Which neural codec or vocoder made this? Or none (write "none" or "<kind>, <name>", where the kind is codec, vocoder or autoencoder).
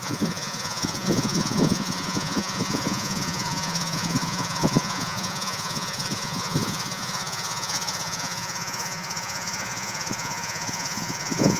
vocoder, Vocos